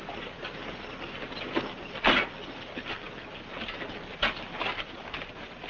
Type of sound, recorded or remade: recorded